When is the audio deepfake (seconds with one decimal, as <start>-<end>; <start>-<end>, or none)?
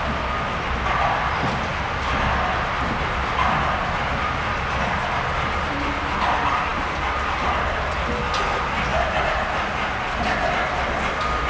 none